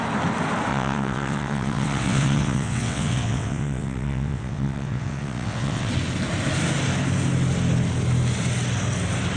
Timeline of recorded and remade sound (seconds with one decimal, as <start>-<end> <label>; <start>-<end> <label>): 0.0-0.7 recorded; 0.7-5.9 remade; 5.9-9.4 recorded